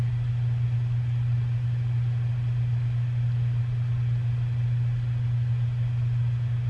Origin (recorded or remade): recorded